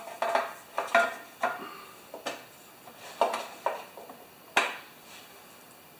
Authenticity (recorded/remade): recorded